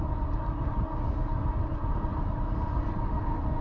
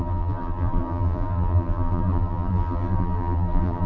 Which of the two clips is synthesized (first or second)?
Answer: second